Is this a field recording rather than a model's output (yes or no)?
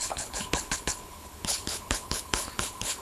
no